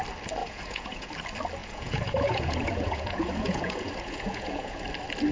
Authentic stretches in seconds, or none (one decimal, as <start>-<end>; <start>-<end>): 0.0-0.4; 1.1-1.6; 4.8-5.3

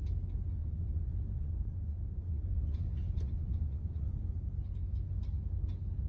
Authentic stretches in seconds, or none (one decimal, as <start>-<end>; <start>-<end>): 0.0-0.6; 4.3-6.1